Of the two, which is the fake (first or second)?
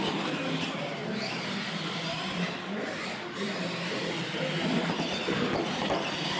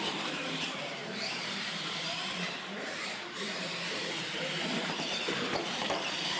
second